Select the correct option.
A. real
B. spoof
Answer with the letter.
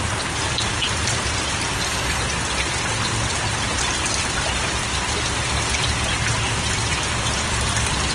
B